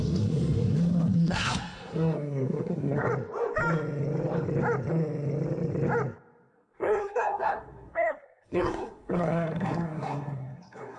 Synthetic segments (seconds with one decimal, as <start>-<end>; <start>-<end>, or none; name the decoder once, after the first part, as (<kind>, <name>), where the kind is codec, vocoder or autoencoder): 0.0-3.1 (codec, SNAC); 6.5-11.0